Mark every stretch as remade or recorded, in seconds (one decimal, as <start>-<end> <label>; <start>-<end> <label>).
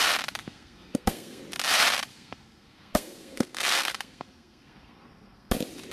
0.0-0.4 recorded; 0.4-1.4 remade; 1.4-2.1 recorded; 2.1-5.5 remade; 5.5-5.9 recorded